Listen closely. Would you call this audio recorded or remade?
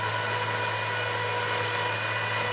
recorded